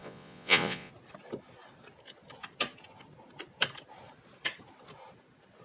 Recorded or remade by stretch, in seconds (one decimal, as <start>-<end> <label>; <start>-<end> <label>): 0.0-0.9 remade; 0.9-5.6 recorded